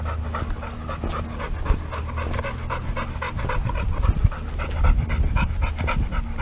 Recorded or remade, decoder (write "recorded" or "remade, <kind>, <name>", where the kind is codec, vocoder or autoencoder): recorded